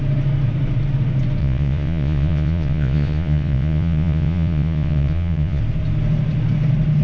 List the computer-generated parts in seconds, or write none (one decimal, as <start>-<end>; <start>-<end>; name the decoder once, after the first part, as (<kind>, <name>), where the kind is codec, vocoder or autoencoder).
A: 1.4-5.6 (vocoder, Vocos)